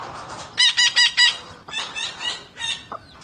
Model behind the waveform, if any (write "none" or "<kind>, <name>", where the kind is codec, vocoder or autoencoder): none